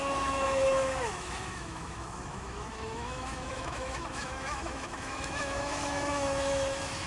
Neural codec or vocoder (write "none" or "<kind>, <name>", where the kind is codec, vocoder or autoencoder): autoencoder, DAC-VAE